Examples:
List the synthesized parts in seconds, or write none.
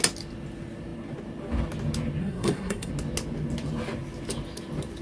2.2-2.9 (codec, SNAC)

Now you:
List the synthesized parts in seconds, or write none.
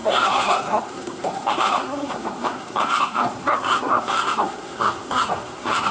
0.0-5.9 (codec, SNAC)